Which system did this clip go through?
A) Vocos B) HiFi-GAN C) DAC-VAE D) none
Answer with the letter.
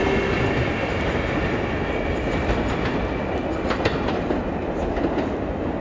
D